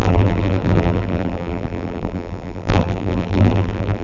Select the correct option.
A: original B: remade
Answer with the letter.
B